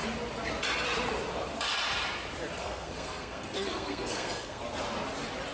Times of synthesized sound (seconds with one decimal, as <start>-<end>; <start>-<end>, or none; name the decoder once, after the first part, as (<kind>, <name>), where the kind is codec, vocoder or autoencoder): 2.6-4.6 (codec, SNAC)